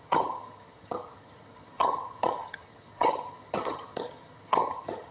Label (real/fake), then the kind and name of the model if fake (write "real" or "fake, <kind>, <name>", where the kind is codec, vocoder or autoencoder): fake, vocoder, HiFi-GAN